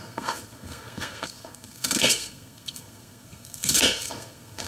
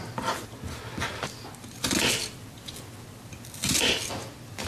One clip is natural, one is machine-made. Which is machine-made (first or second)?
first